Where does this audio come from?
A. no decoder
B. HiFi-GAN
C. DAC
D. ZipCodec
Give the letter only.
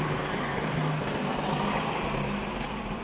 A